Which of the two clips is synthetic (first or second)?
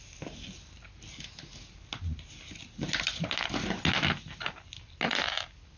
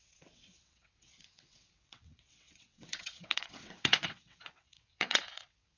second